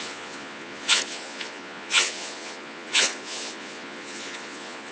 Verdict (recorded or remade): remade